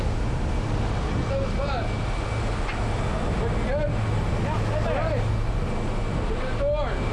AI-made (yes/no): no